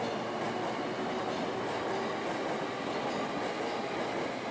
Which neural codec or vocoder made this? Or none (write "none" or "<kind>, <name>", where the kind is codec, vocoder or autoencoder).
none